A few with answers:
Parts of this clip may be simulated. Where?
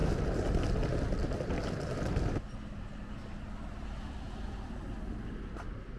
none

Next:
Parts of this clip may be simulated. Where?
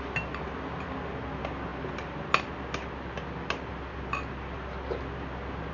none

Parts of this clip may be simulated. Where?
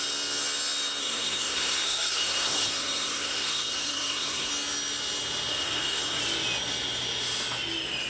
1.0-4.5 (codec, SNAC); 5.5-6.2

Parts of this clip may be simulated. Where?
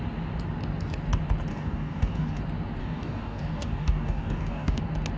1.5-2.4 (codec, DAC); 2.8-4.8